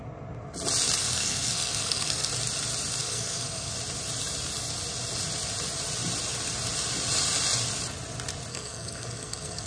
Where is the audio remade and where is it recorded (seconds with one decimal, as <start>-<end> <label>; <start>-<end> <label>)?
0.0-1.0 recorded; 1.0-2.3 remade; 2.3-3.0 recorded; 3.0-3.7 remade; 3.7-8.5 recorded; 8.5-9.7 remade